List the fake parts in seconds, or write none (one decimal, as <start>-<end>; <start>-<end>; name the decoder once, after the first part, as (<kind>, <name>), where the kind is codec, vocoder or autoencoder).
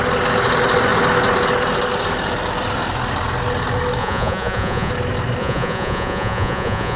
4.0-4.9 (vocoder, Vocos); 5.4-7.0